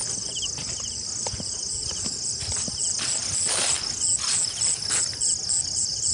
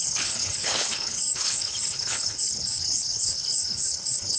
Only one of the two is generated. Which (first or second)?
second